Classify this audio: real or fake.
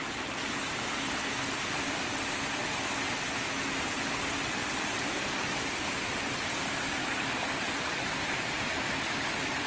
real